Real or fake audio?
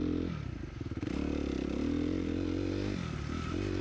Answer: real